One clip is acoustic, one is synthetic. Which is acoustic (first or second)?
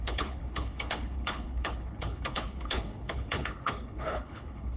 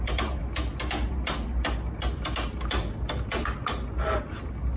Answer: second